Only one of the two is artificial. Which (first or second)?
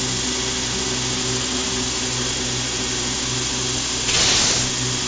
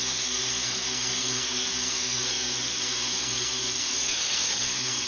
second